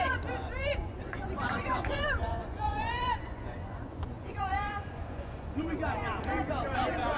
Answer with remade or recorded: remade